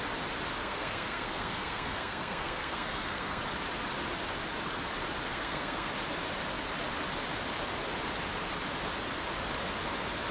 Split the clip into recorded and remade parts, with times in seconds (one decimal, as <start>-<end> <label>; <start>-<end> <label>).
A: 0.0-0.6 recorded; 0.6-3.4 remade; 3.4-5.3 recorded; 5.3-5.9 remade; 5.9-10.3 recorded